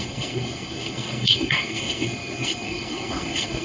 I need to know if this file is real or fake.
fake